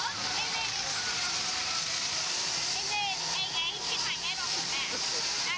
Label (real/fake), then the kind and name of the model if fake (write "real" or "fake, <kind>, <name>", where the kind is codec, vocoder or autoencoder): real